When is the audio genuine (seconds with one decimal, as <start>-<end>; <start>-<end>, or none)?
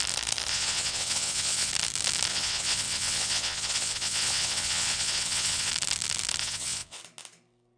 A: 0.0-0.5; 1.7-2.3; 5.7-6.4; 7.0-7.8